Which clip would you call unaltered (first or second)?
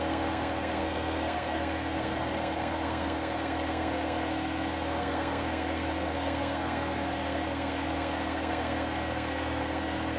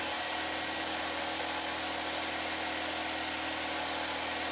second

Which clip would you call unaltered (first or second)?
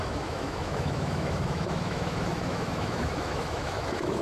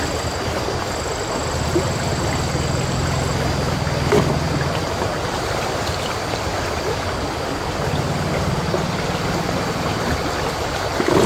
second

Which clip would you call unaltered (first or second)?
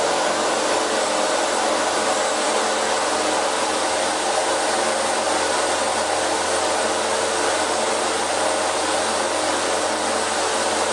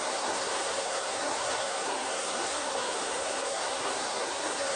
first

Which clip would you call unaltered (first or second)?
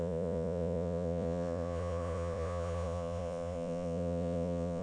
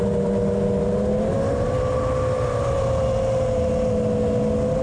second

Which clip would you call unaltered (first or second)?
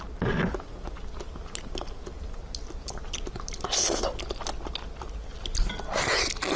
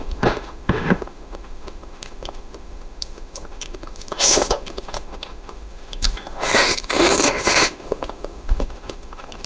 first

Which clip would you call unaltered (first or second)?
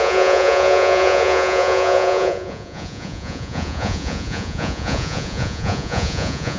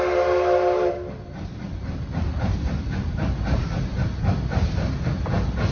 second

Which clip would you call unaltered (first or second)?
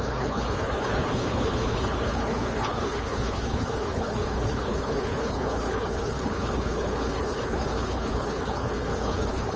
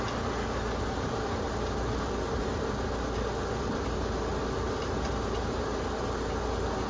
second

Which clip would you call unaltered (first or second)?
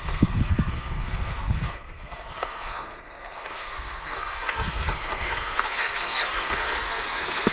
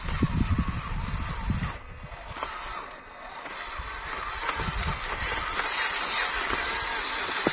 second